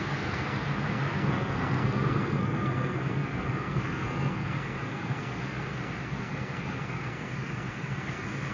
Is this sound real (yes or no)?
no